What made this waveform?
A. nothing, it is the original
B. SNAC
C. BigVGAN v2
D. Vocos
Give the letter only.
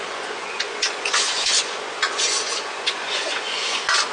D